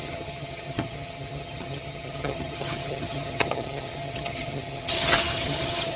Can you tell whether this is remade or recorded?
remade